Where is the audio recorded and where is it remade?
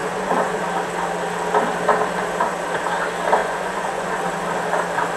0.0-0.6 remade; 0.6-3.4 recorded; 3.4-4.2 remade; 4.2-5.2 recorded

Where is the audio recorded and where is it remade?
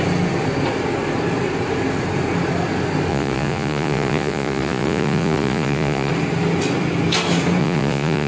0.0-3.1 recorded; 3.1-6.1 remade; 6.1-7.6 recorded; 7.6-8.3 remade